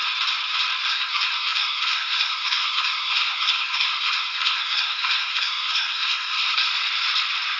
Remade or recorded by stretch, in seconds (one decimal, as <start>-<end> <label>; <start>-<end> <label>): 0.0-0.9 recorded; 0.9-6.7 remade; 6.7-7.6 recorded